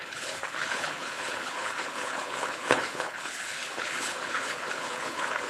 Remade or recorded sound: remade